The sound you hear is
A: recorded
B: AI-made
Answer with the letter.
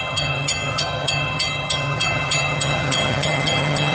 B